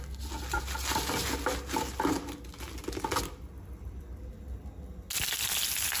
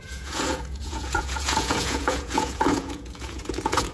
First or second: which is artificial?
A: second